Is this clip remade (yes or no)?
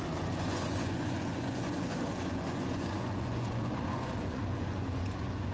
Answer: yes